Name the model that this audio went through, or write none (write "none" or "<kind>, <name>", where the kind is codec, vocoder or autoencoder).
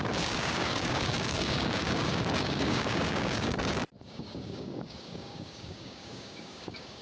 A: codec, DAC